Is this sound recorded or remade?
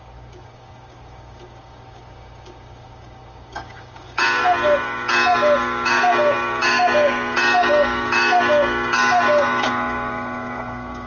remade